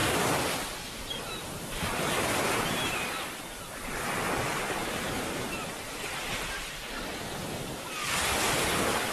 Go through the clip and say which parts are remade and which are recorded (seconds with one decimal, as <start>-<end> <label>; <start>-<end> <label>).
0.0-9.1 recorded